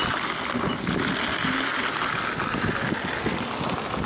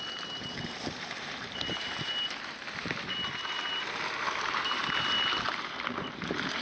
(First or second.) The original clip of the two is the first